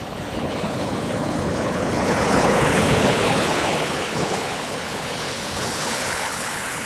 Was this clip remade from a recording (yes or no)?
yes